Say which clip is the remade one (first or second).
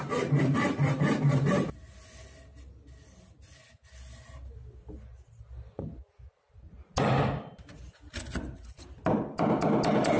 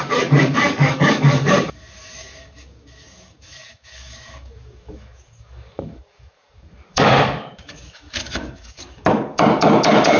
second